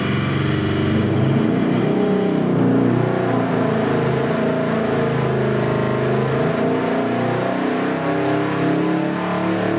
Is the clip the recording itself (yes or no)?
yes